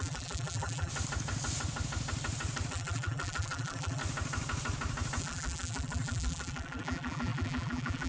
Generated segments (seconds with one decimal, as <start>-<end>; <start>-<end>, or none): 0.0-0.9; 2.7-4.0; 5.2-8.1